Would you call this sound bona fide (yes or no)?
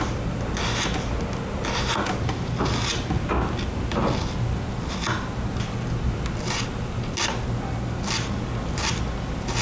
yes